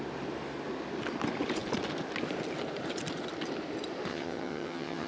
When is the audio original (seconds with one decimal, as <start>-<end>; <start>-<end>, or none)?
0.0-4.1